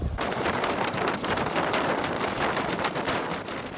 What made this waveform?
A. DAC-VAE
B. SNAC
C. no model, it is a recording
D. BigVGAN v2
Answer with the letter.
D